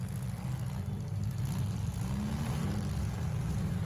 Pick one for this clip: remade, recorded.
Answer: recorded